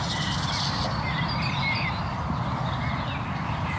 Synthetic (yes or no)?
no